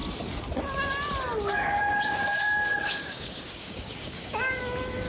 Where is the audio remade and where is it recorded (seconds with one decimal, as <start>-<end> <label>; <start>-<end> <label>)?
0.0-1.5 recorded; 1.5-4.6 remade; 4.6-5.1 recorded